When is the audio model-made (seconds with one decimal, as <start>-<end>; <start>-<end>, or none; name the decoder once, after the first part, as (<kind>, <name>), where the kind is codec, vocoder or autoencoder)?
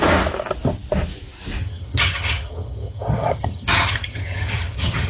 1.6-5.1 (vocoder, HiFi-GAN)